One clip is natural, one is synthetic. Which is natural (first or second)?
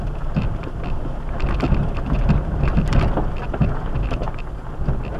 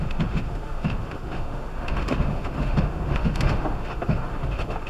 first